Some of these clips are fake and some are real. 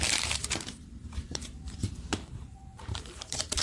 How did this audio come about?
fake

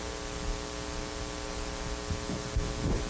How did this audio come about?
real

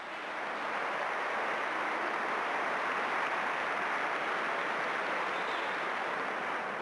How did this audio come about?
real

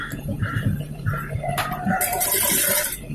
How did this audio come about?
fake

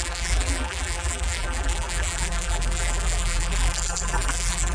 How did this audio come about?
fake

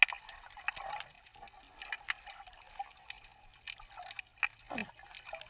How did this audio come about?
real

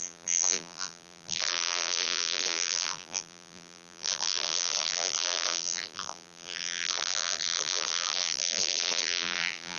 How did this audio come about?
fake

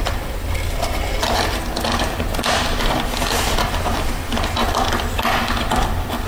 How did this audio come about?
fake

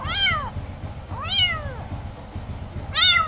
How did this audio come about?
real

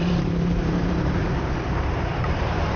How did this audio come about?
fake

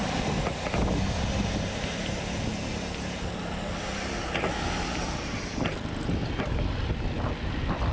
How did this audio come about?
real